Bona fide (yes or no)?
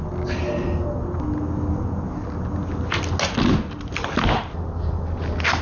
yes